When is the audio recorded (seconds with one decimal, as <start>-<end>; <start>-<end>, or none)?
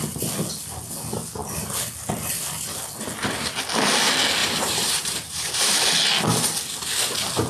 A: 0.0-4.4; 5.6-7.5